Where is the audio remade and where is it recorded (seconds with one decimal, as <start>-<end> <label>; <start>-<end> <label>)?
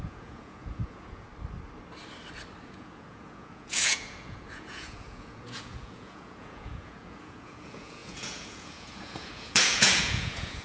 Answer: 0.0-1.3 remade; 1.3-2.6 recorded; 2.6-10.6 remade